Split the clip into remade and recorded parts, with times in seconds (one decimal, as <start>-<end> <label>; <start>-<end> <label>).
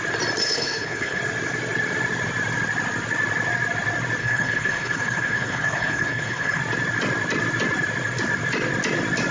0.0-0.4 recorded; 0.4-1.2 remade; 1.2-4.2 recorded; 4.2-6.6 remade; 6.6-9.3 recorded